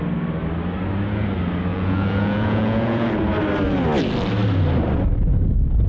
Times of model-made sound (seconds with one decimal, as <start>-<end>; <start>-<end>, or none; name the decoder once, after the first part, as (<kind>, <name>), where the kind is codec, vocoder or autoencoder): 1.7-3.1 (vocoder, Vocos)